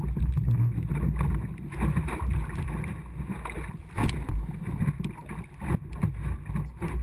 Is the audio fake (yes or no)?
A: no